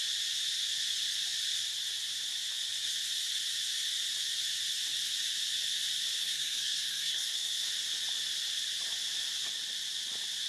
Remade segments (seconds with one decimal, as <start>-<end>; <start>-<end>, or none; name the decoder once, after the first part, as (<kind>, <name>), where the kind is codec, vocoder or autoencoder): 6.2-7.7 (codec, SNAC)